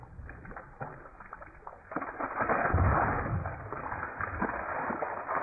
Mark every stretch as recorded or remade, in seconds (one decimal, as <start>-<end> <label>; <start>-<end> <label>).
0.0-5.4 recorded